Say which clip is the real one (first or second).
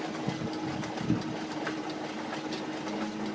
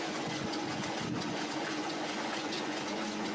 first